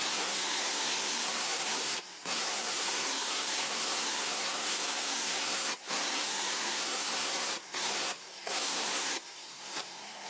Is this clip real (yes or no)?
no